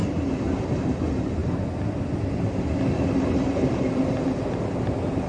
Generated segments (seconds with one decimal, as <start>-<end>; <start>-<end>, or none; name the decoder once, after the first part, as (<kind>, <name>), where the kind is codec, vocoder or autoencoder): none

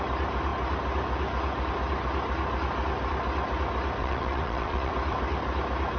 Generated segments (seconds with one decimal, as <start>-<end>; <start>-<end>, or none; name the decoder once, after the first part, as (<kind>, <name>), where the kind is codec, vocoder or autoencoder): 4.0-4.9 (vocoder, Vocos)